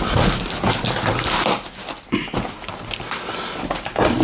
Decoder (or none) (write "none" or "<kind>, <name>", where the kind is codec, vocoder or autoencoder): none